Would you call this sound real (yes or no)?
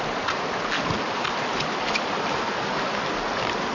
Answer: yes